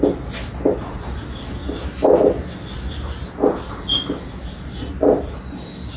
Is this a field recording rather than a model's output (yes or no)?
yes